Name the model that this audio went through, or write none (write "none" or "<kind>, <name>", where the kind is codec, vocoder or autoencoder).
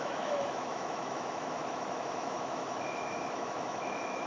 autoencoder, DAC-VAE